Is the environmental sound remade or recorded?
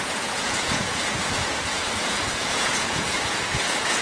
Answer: remade